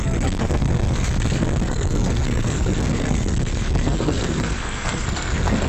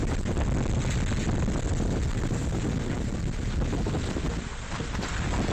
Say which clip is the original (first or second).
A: second